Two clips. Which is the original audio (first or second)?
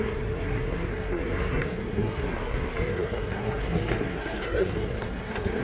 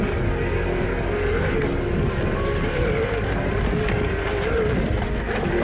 second